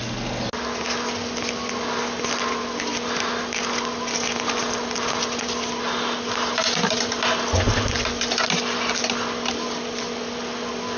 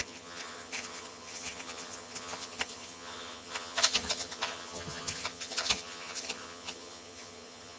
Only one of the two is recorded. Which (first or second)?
first